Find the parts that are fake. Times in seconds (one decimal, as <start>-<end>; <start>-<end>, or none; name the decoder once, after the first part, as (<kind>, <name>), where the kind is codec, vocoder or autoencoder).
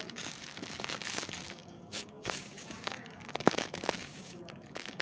0.0-5.0 (codec, DAC)